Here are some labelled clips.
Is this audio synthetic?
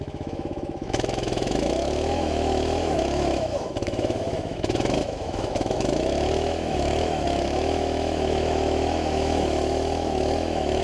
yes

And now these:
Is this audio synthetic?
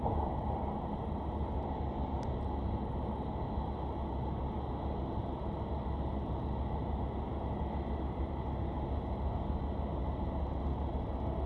no